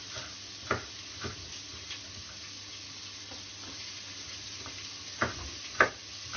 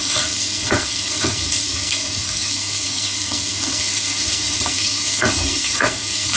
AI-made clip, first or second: second